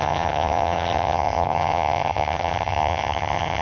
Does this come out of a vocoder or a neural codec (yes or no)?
yes